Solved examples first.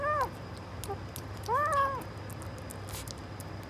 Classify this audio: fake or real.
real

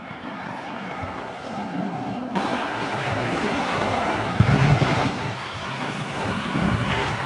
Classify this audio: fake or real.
fake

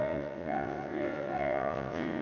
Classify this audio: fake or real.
fake